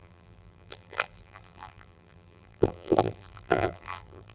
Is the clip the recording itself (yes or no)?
no